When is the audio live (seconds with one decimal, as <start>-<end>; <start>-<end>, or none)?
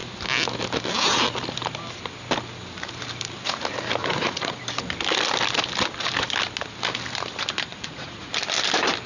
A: 0.0-4.0; 4.6-7.7; 8.3-9.1